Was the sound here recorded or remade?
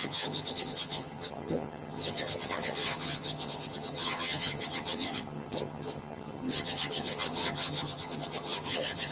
remade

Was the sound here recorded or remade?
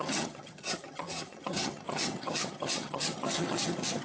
remade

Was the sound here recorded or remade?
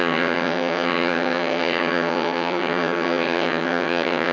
remade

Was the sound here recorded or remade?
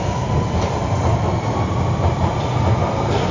recorded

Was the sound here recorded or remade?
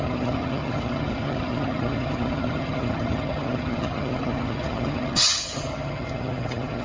remade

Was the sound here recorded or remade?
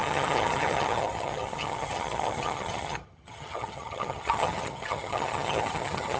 remade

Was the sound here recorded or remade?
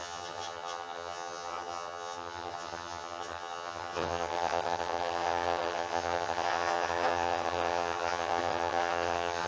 remade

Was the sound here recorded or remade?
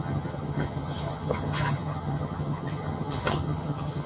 remade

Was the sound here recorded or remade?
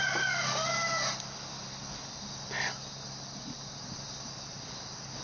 recorded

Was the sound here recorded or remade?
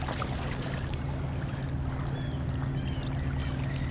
recorded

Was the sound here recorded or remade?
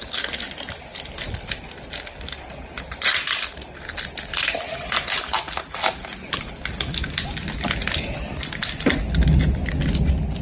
recorded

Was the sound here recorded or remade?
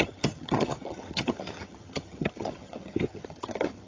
remade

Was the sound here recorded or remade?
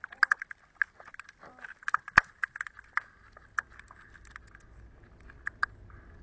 recorded